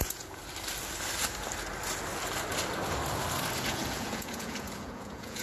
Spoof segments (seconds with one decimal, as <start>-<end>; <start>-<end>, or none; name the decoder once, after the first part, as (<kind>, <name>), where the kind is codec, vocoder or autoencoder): 0.0-0.4 (vocoder, Vocos); 3.6-5.4